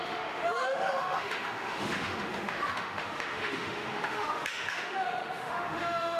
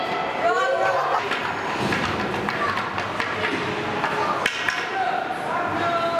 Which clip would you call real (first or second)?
second